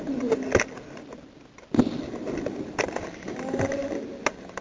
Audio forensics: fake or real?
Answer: real